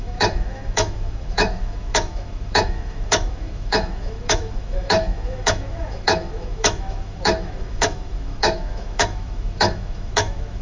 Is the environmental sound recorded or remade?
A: remade